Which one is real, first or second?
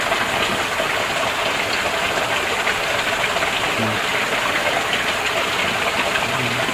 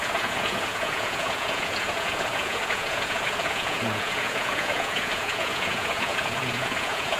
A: first